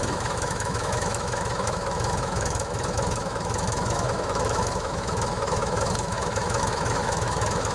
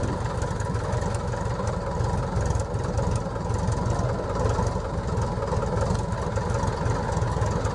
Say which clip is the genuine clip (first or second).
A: second